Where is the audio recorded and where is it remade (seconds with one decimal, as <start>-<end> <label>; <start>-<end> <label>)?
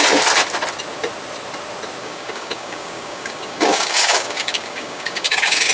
0.0-2.0 recorded; 2.0-5.7 remade